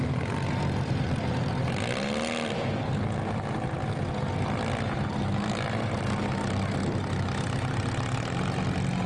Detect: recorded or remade recorded